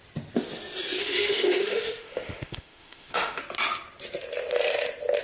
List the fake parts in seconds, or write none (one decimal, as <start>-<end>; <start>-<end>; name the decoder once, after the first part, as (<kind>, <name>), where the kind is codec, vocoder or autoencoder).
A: 1.0-3.4 (autoencoder, DAC-VAE)